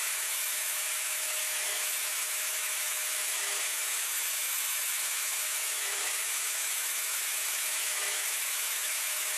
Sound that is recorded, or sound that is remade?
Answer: remade